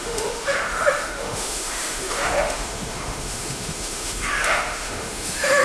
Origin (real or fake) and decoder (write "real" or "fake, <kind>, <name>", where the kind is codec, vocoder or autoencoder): fake, autoencoder, DAC-VAE